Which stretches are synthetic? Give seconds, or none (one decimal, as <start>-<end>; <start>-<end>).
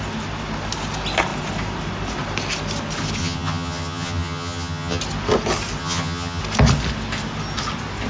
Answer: 3.2-5.0; 5.8-6.4